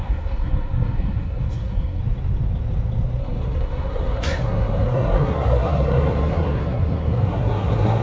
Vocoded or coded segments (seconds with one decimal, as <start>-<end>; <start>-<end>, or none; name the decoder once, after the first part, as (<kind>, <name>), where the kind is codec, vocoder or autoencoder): 0.0-2.0 (codec, SNAC); 3.2-8.0